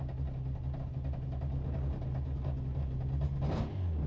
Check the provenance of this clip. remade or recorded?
recorded